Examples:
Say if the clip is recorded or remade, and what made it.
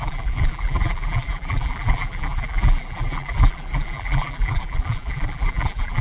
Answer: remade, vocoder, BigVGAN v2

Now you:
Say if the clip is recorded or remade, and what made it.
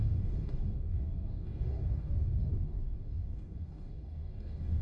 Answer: remade, codec, DAC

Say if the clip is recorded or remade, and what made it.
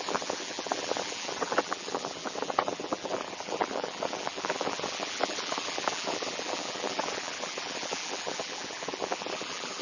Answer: remade, vocoder, BigVGAN v2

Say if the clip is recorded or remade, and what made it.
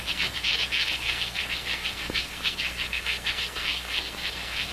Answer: remade, codec, SNAC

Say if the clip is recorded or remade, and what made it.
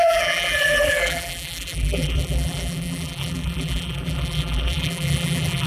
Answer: remade, vocoder, BigVGAN v2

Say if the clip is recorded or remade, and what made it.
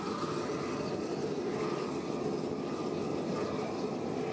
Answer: recorded